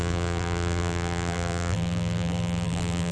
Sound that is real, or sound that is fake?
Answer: fake